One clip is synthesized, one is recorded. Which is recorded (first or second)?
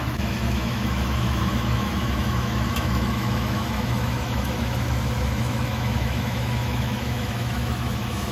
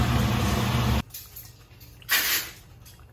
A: second